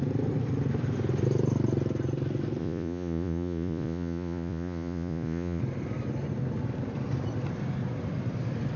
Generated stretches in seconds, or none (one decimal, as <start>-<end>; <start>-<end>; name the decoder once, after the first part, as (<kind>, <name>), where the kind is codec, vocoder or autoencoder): 2.6-5.6 (vocoder, Vocos)